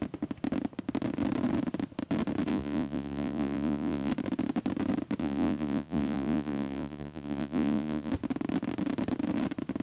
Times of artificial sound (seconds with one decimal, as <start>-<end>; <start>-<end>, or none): 2.5-4.1; 5.2-8.1